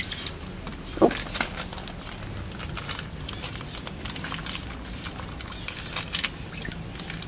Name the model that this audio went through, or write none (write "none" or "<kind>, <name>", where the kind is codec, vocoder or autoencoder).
none